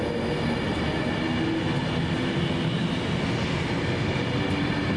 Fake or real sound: real